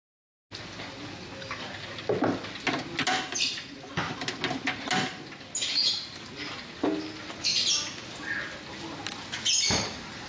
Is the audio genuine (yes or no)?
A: yes